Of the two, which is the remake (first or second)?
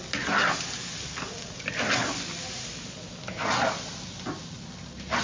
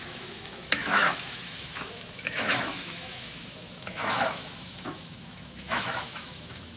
second